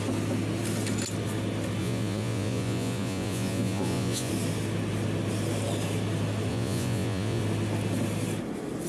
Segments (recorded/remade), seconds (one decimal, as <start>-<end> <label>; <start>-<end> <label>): 0.0-1.8 recorded; 1.8-4.3 remade; 4.3-6.5 recorded; 6.5-7.4 remade; 7.4-8.9 recorded